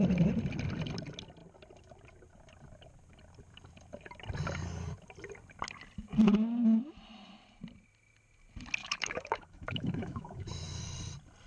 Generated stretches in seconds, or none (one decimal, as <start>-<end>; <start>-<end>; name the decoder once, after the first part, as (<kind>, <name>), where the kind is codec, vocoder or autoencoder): 8.8-10.8 (autoencoder, DAC-VAE)